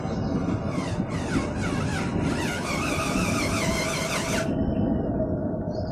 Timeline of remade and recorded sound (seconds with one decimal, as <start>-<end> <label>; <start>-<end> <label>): 0.0-2.1 recorded; 2.1-3.4 remade; 3.4-5.9 recorded